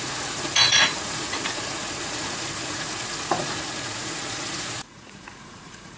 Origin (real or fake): fake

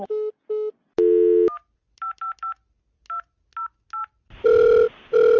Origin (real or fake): real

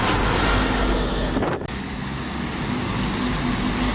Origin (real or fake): real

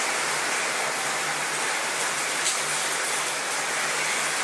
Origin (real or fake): real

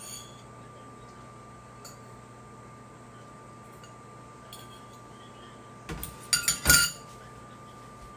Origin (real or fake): real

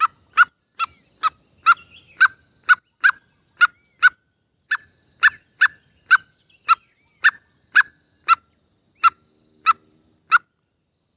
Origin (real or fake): real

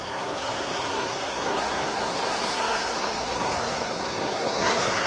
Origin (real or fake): fake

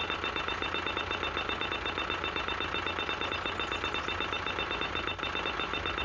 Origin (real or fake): real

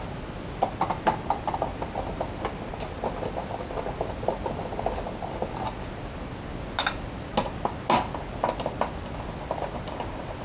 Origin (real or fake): real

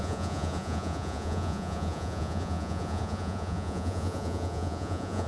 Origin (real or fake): fake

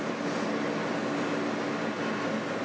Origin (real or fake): real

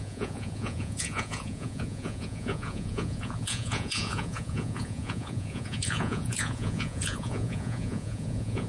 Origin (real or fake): fake